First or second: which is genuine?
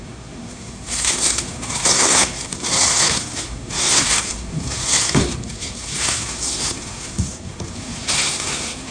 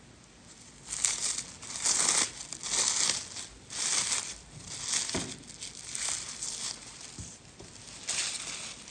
second